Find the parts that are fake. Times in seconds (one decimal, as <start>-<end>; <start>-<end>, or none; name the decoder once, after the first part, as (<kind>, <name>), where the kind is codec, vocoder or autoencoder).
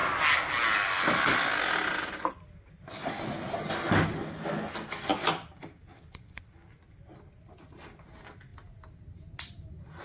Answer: none